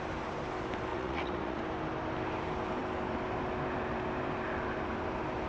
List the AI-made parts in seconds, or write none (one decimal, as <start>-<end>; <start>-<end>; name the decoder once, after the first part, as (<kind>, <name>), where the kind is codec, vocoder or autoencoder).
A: 0.9-1.6 (vocoder, Vocos)